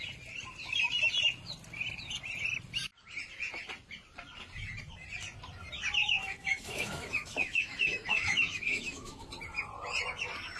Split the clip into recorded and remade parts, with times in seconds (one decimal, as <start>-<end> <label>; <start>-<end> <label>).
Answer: 0.0-6.0 recorded; 6.0-9.3 remade; 9.3-10.6 recorded